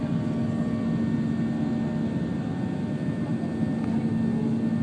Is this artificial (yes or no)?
no